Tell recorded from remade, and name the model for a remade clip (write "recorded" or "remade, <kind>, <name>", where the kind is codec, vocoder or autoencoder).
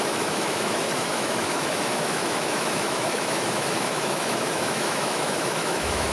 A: remade, autoencoder, DAC-VAE